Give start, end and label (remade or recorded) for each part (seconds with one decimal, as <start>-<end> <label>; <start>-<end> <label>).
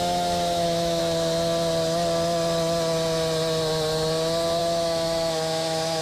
0.0-1.0 remade; 1.0-4.6 recorded; 4.6-6.0 remade